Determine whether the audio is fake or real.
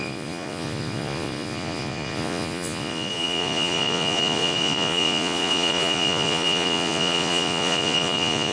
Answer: fake